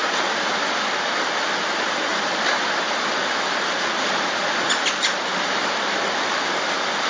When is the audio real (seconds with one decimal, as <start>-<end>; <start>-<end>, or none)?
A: 0.0-7.1